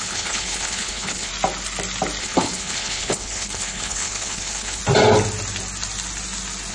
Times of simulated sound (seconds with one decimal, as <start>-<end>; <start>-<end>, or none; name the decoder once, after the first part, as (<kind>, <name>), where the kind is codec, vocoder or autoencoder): 0.0-1.3 (codec, HILCodec); 2.2-4.8